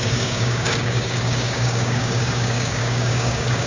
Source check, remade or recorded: remade